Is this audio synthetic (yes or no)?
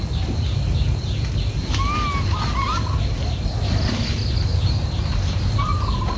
no